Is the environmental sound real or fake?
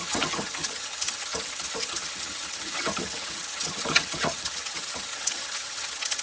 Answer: fake